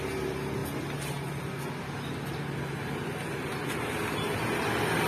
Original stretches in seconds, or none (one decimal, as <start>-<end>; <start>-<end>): 0.0-5.1